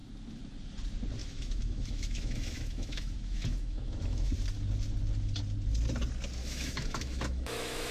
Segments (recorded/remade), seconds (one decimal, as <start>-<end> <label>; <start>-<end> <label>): 0.0-1.2 recorded; 1.2-4.3 remade; 4.3-6.4 recorded; 6.4-7.9 remade